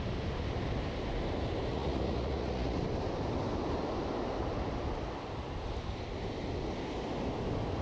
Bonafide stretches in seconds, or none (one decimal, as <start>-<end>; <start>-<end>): 0.0-1.7; 2.8-7.8

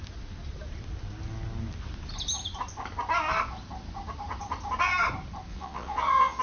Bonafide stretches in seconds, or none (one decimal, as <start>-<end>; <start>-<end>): 0.0-5.5

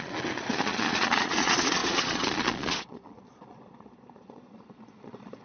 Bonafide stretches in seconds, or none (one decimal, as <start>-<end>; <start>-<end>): none